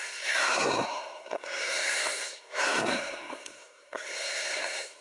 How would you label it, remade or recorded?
remade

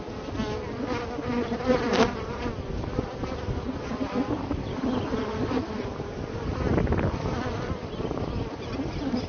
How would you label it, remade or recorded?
recorded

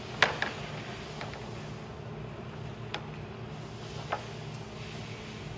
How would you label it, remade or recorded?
recorded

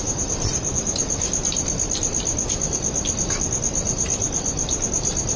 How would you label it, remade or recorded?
remade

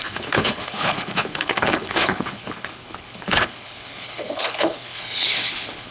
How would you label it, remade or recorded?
remade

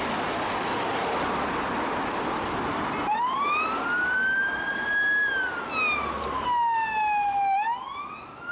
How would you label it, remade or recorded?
recorded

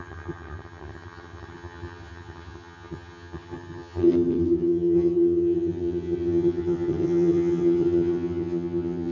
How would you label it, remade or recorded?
remade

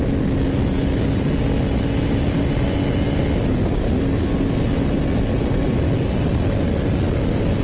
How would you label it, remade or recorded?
recorded